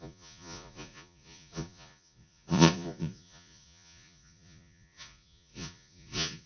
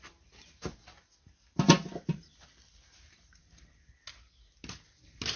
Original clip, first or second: second